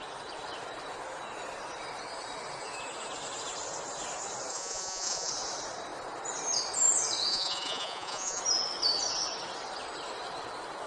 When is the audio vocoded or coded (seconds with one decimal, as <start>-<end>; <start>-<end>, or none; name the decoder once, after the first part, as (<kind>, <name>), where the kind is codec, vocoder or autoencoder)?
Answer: 4.5-5.3 (vocoder, Vocos); 7.3-8.4

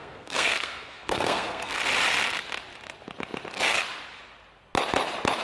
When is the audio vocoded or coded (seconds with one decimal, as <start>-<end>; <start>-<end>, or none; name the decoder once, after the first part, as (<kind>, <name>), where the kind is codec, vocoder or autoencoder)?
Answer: 0.0-1.8 (codec, SNAC)

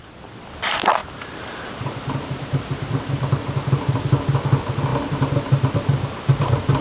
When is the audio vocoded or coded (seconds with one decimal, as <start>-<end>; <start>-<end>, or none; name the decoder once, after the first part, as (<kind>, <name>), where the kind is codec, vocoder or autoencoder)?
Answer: 1.0-3.1 (vocoder, BigVGAN v2)

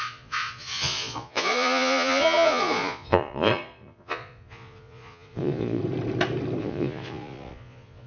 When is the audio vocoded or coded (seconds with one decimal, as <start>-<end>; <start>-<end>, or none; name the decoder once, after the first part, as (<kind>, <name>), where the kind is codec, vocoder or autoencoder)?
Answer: 0.0-5.8 (vocoder, Vocos); 6.6-8.1

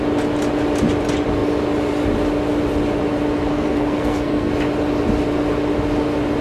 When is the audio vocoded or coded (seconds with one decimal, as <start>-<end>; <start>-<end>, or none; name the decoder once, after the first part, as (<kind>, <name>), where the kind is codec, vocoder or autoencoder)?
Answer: 3.5-4.5 (codec, SNAC)

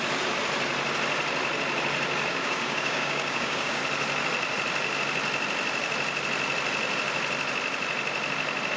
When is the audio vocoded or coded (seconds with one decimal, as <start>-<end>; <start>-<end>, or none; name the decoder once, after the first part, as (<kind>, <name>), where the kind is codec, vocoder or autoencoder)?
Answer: 2.3-3.8 (codec, DAC)

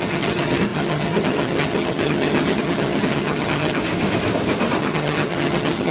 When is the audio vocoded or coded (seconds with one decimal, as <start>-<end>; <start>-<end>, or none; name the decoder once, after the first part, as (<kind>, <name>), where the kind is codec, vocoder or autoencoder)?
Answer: 0.0-3.8 (vocoder, HiFi-GAN); 4.8-5.9

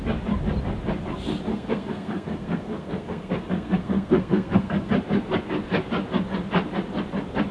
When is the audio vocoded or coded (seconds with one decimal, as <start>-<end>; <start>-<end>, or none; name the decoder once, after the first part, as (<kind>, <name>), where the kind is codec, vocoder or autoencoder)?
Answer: 1.5-4.9 (codec, SNAC)